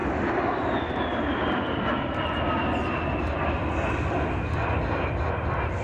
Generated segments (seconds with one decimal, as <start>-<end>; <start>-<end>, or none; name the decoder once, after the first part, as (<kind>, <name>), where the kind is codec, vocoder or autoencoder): none